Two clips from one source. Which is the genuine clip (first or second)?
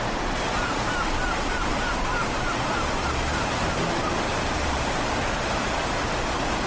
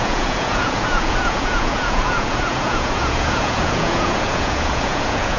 first